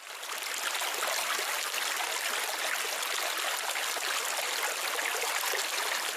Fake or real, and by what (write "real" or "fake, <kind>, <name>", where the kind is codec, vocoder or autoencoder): real